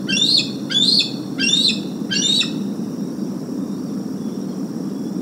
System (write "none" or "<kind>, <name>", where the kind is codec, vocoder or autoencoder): none